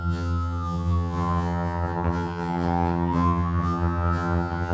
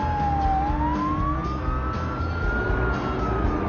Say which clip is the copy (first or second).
first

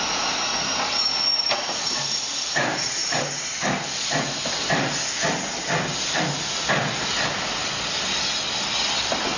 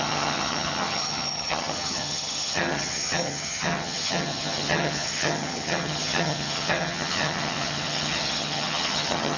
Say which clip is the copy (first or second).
second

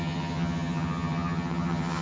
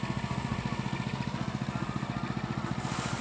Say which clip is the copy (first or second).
first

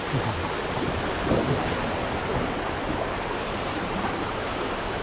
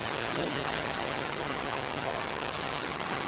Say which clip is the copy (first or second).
second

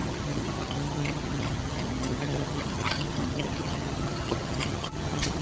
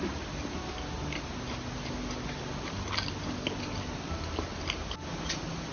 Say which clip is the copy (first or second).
first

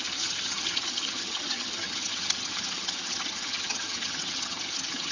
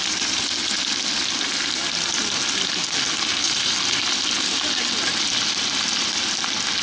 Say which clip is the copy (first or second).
first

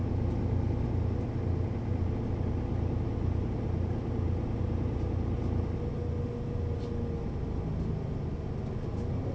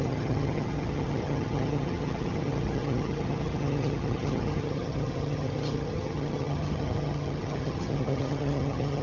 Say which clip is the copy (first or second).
second